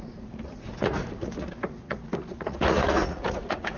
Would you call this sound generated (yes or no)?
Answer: yes